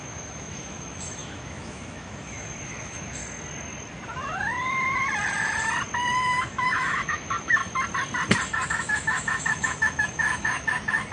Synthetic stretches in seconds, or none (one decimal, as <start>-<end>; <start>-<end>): 0.0-3.2; 6.4-7.6; 8.7-11.1